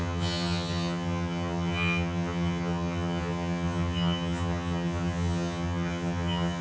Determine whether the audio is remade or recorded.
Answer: remade